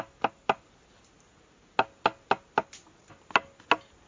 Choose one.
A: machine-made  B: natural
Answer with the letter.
B